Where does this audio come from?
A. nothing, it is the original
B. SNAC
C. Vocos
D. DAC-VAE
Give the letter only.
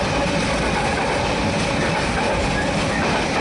A